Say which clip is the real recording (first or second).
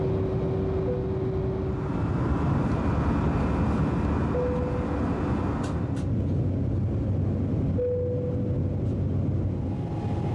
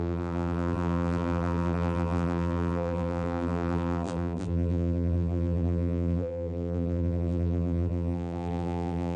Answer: first